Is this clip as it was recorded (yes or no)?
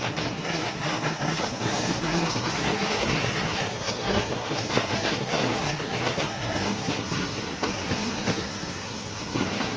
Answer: no